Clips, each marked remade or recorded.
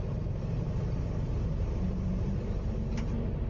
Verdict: remade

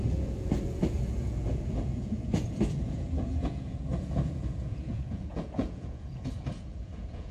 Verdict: remade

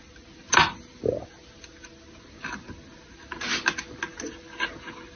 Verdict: recorded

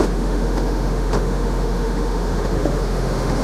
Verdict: remade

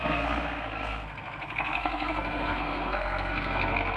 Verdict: remade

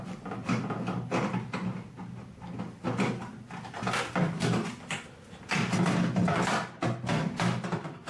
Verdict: recorded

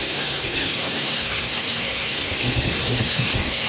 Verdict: remade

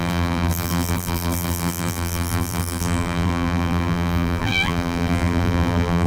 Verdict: remade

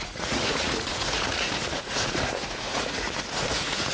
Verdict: remade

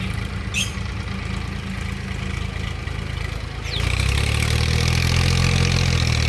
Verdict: recorded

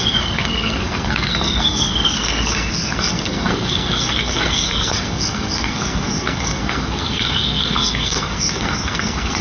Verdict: remade